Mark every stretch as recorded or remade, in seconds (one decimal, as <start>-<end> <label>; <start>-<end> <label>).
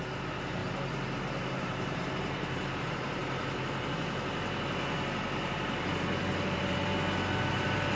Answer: 0.0-0.6 remade; 0.6-1.2 recorded; 1.2-3.2 remade; 3.2-6.2 recorded; 6.2-6.9 remade; 6.9-7.5 recorded; 7.5-8.0 remade